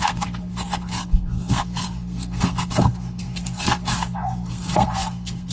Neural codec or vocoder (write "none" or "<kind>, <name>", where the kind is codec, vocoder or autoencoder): codec, SNAC